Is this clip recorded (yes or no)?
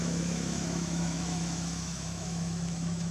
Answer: no